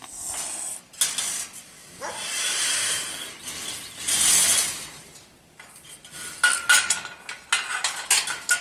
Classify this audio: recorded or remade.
recorded